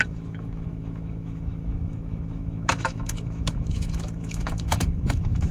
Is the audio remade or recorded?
remade